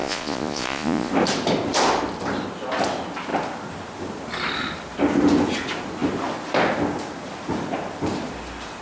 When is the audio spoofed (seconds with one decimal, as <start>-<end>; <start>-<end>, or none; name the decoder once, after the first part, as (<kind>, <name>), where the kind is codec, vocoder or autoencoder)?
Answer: 0.0-1.1 (vocoder, Vocos)